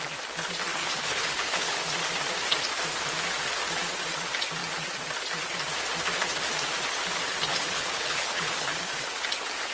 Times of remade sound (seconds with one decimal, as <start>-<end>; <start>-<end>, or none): 0.8-1.8; 7.3-8.7